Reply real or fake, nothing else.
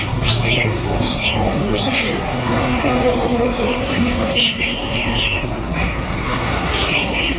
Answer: fake